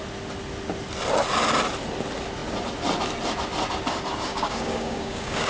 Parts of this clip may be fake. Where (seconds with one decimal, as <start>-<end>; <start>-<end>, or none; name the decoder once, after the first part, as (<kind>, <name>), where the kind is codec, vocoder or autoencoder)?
4.3-5.5 (codec, DAC)